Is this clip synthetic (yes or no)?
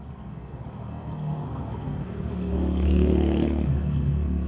yes